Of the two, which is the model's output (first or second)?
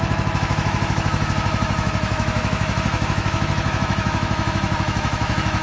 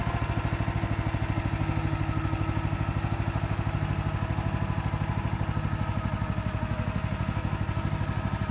first